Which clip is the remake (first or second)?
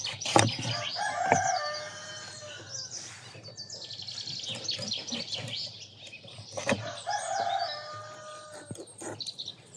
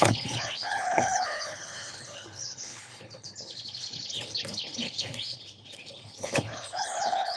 second